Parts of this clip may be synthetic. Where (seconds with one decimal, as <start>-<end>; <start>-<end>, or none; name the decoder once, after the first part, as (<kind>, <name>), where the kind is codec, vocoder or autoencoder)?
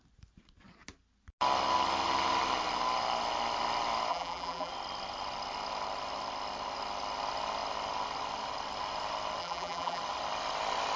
4.1-4.7 (vocoder, BigVGAN v2); 9.4-10.0